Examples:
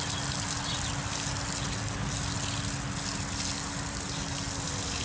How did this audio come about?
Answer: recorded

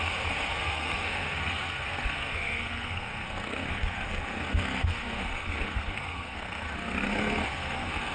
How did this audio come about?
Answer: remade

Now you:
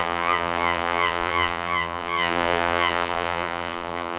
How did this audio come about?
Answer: remade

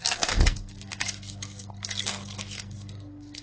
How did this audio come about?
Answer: remade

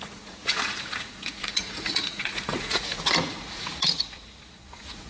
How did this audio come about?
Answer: remade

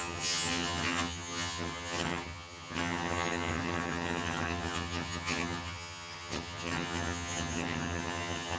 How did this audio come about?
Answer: remade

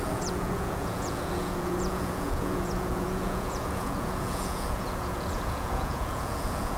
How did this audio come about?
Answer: remade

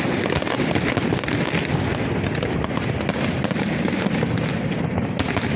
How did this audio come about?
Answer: recorded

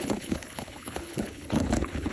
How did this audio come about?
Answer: remade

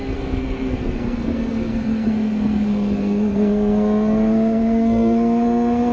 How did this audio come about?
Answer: remade